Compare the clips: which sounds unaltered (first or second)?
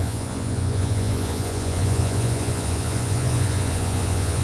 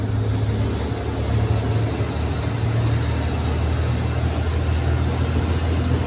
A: second